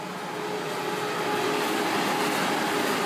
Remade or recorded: recorded